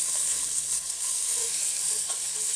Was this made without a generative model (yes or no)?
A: no